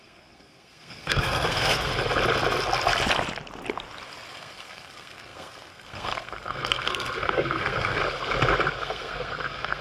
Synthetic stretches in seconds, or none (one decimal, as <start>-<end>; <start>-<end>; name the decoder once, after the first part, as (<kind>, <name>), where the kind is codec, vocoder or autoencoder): 0.0-1.9 (codec, SNAC); 4.3-8.0; 8.8-9.8